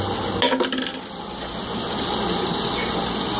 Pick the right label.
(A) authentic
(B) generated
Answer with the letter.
A